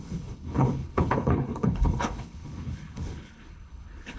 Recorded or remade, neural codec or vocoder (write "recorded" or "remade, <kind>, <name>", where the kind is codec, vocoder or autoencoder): remade, codec, HILCodec